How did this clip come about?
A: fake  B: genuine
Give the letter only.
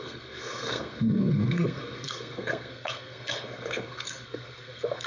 A